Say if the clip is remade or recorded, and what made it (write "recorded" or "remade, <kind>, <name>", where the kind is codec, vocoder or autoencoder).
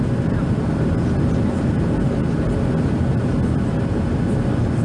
recorded